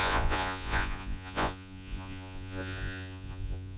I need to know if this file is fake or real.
fake